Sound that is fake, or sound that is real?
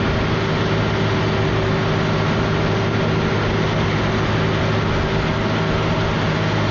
real